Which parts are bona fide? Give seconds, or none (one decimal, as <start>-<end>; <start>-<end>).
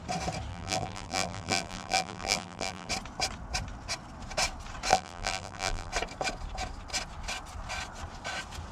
0.0-0.5; 2.9-4.9; 5.9-8.7